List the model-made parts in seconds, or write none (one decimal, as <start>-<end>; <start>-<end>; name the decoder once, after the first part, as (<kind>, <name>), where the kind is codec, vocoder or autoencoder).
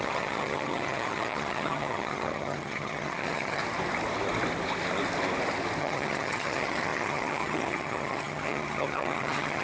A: 0.0-3.6 (vocoder, HiFi-GAN); 5.8-9.6